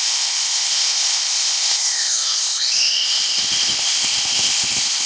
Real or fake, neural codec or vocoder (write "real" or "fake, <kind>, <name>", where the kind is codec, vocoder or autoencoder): fake, codec, ZipCodec